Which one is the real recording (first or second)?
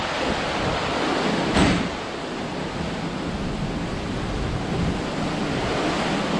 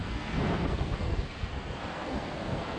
first